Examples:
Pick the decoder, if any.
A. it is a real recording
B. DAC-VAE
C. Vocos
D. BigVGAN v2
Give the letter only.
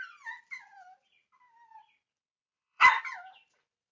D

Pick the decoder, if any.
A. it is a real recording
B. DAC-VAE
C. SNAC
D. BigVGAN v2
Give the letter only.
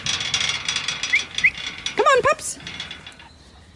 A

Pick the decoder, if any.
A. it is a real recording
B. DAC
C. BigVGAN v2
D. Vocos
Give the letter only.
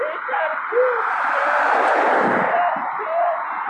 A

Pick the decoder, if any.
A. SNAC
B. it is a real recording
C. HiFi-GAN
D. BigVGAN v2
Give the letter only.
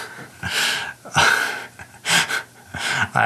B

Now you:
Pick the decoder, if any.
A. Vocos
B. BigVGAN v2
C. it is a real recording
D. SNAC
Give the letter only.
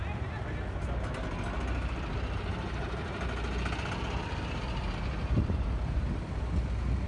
C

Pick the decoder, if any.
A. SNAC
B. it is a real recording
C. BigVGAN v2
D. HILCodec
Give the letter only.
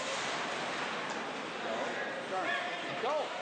C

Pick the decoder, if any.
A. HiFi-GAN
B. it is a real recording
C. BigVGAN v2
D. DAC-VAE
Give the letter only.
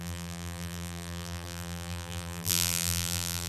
C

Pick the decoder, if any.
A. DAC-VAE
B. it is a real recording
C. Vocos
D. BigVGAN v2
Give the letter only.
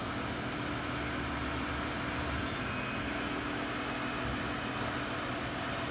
B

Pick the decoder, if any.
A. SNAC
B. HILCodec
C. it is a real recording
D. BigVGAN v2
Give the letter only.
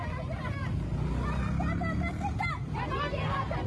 C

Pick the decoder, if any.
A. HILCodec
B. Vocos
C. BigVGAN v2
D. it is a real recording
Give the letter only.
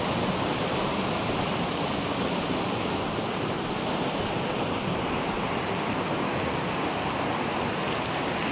D